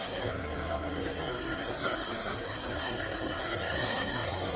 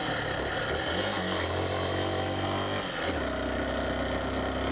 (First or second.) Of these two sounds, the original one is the second